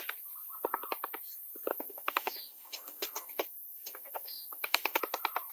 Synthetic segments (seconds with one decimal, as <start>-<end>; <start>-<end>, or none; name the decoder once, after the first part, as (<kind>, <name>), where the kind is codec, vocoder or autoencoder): 1.7-5.0 (codec, DAC)